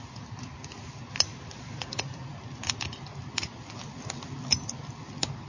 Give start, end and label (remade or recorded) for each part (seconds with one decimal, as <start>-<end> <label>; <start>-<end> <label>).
0.0-1.3 recorded; 1.3-1.9 remade; 1.9-5.5 recorded